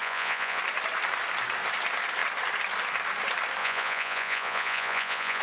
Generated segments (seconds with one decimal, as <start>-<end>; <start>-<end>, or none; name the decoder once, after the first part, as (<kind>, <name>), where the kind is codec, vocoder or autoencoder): 0.0-0.6 (vocoder, Vocos); 3.6-5.4